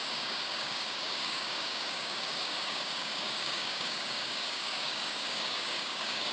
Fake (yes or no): yes